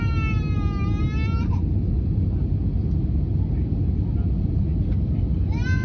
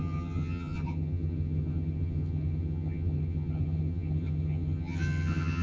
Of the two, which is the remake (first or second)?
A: second